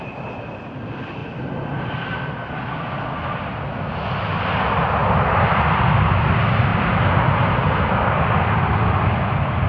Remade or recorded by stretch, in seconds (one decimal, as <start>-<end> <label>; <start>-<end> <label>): 0.0-9.7 recorded